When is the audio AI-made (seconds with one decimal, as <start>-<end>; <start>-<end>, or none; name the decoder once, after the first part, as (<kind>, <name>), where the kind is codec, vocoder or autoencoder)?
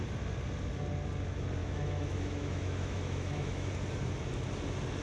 1.6-3.7 (autoencoder, DAC-VAE)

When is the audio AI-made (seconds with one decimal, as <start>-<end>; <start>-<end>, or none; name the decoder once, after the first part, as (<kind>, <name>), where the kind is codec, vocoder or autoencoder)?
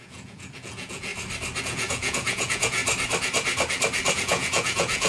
0.0-1.1 (vocoder, Vocos); 1.6-2.8; 4.1-5.1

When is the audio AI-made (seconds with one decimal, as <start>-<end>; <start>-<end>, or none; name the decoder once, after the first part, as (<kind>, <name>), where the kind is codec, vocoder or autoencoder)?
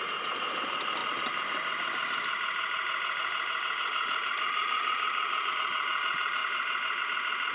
6.4-7.0 (vocoder, BigVGAN v2)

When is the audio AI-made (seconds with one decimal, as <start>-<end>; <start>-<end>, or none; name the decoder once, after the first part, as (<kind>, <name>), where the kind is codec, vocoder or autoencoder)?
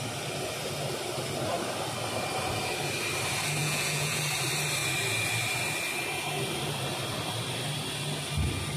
3.6-4.2 (vocoder, Vocos)